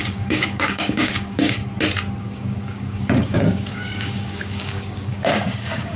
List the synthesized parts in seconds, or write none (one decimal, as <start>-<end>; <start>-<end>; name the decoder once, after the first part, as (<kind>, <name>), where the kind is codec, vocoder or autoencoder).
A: 0.0-1.6 (codec, DAC); 2.2-6.0